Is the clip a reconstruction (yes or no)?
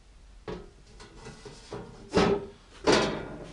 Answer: no